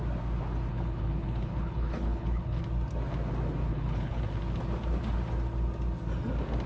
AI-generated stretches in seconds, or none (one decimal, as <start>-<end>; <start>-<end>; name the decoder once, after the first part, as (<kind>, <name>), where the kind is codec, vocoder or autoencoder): 0.7-2.6 (codec, HILCodec); 3.7-4.2

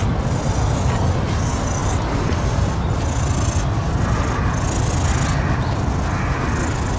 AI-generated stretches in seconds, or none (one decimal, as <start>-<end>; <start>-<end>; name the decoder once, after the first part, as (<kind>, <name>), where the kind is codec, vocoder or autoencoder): none